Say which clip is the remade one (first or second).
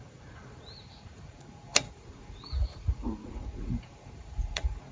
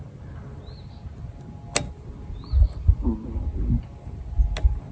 first